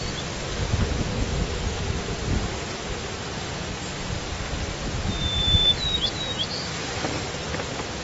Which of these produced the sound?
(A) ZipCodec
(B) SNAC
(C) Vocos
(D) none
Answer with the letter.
D